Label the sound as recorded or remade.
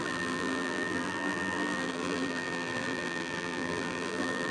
remade